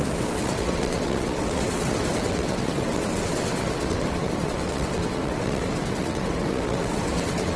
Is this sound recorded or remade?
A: remade